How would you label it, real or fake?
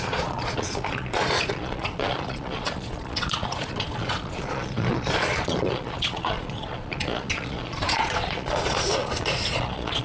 fake